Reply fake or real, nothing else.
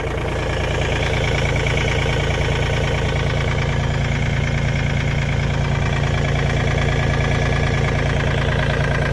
real